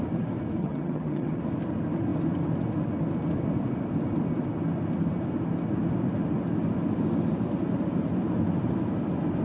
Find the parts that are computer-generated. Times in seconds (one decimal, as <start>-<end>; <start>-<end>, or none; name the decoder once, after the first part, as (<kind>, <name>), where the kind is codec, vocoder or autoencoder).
0.6-1.4 (vocoder, HiFi-GAN)